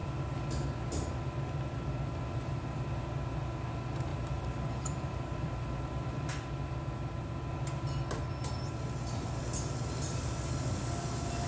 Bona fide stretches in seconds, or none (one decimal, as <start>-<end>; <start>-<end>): 0.0-4.1; 6.3-11.5